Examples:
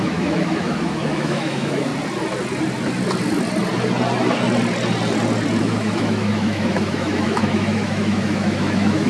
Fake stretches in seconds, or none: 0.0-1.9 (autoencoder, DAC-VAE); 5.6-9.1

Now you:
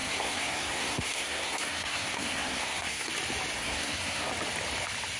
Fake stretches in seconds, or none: 0.0-3.1 (codec, SNAC); 3.6-4.3

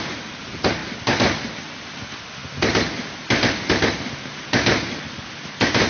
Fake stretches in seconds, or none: none